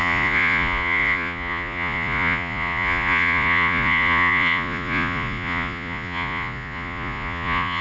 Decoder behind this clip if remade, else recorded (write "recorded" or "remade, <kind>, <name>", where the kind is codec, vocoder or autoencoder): remade, vocoder, Vocos